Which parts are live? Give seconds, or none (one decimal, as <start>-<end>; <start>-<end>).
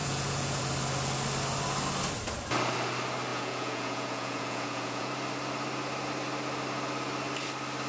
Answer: 0.6-3.3; 5.1-7.9